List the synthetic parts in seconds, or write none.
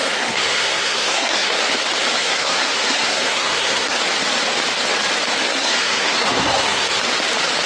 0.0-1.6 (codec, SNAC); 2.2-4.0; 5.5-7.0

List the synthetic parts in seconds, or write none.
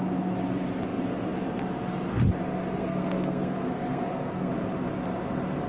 2.7-4.5 (codec, SNAC)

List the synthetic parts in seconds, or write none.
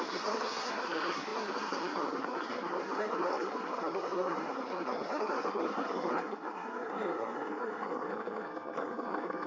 0.0-9.5 (codec, SNAC)